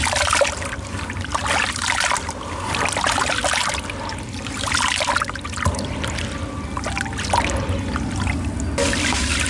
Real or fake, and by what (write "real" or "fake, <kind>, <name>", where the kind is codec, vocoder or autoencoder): real